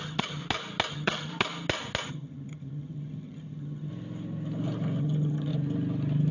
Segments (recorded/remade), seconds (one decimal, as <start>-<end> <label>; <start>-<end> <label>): 0.0-0.4 remade; 0.4-0.9 recorded; 0.9-1.3 remade; 1.3-2.1 recorded; 2.1-3.9 remade; 3.9-5.0 recorded; 5.0-5.5 remade; 5.5-6.3 recorded